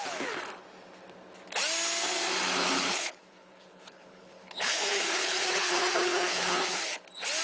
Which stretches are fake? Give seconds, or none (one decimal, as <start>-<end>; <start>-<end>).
2.6-7.0